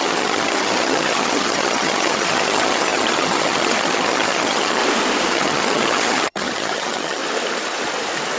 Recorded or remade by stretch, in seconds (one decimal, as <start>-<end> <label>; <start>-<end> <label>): 0.0-4.8 remade; 4.8-5.3 recorded; 5.3-7.2 remade; 7.2-8.4 recorded